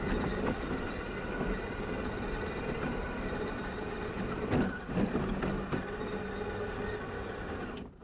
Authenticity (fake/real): real